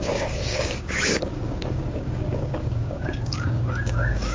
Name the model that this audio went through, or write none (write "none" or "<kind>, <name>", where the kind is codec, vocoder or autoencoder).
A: codec, DAC